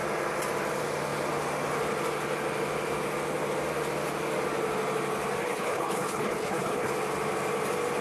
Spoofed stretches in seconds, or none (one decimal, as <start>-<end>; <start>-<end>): 5.4-6.9